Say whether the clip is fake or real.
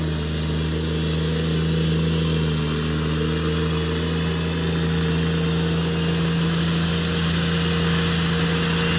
real